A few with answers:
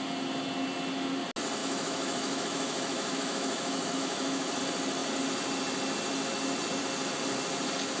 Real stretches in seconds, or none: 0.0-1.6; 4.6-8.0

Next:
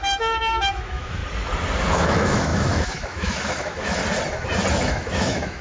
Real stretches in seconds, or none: 1.2-1.9; 4.0-4.7